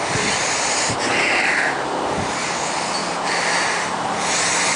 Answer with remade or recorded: recorded